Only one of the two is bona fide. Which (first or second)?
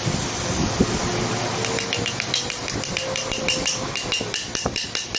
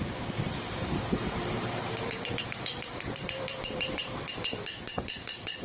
first